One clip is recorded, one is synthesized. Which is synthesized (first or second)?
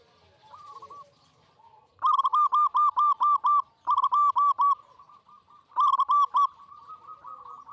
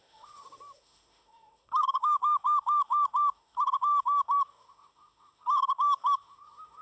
second